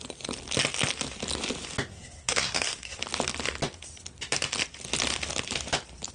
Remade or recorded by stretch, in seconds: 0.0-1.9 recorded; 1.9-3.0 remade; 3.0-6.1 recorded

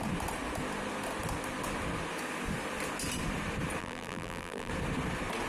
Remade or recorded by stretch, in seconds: 0.0-3.8 recorded; 3.8-4.7 remade; 4.7-5.5 recorded

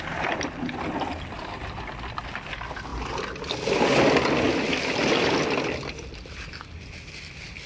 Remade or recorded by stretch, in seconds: 0.0-7.7 recorded

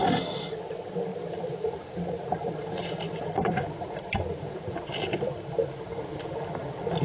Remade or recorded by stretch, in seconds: 0.0-1.1 recorded; 1.1-5.3 remade; 5.3-7.0 recorded

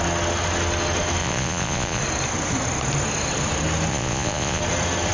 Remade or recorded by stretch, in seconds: 0.0-1.2 recorded; 1.2-2.0 remade; 2.0-3.9 recorded; 3.9-4.6 remade; 4.6-5.1 recorded

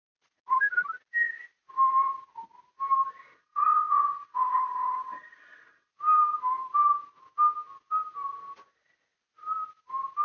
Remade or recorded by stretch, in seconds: 0.0-3.2 recorded; 3.2-5.9 remade; 5.9-10.2 recorded

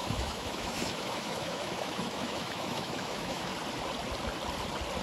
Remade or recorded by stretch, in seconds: 0.0-3.5 remade; 3.5-5.0 recorded